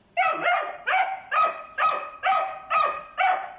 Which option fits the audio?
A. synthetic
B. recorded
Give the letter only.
B